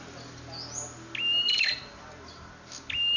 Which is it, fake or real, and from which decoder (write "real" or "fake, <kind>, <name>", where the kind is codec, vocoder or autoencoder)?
real